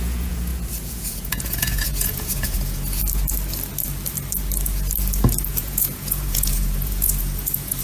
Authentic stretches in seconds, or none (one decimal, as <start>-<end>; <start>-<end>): 3.0-5.5